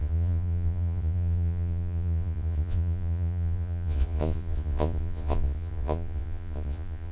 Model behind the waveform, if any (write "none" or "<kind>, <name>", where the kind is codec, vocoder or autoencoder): vocoder, Vocos